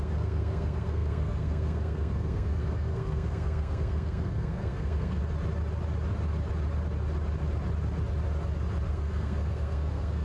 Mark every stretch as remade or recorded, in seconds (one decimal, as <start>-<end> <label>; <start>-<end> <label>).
0.0-5.2 remade; 5.2-8.9 recorded; 8.9-10.2 remade